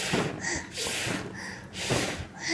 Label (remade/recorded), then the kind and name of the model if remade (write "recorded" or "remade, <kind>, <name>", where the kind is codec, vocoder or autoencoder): recorded